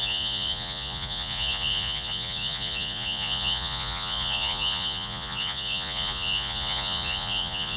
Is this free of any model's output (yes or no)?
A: no